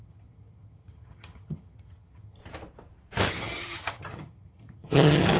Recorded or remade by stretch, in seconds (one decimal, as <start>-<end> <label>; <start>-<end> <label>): 0.0-2.4 remade; 2.4-3.3 recorded; 3.3-5.4 remade